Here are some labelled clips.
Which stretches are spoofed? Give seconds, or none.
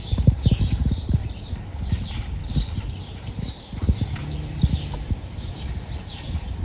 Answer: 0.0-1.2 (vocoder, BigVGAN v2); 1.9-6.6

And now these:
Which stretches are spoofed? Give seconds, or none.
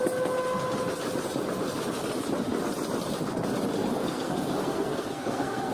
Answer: 4.0-5.7 (codec, SNAC)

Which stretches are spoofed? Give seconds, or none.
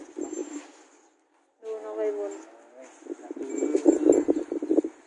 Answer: none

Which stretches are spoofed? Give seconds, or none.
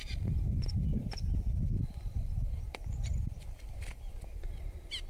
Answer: 1.8-5.1 (vocoder, BigVGAN v2)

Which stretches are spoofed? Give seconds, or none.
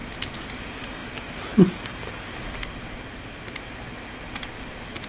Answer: none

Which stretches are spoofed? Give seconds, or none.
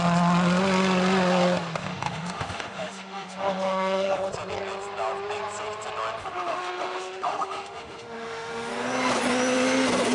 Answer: 1.8-4.3 (autoencoder, DAC-VAE); 6.2-8.7